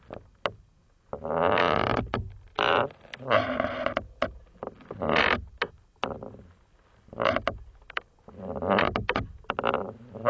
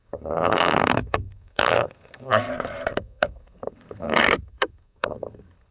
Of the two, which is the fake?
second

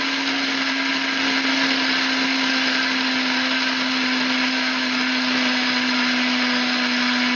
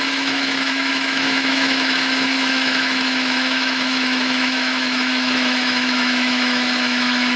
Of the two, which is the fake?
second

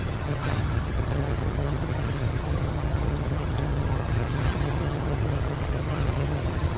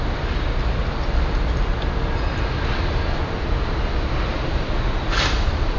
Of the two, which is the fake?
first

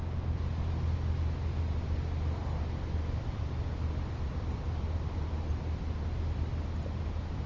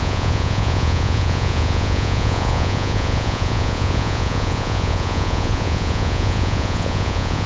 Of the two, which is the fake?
second